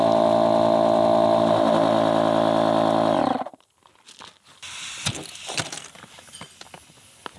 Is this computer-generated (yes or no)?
no